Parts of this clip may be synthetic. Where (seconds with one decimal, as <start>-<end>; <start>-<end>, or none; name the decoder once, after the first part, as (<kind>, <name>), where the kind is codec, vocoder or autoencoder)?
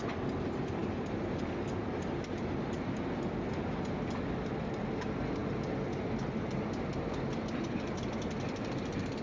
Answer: none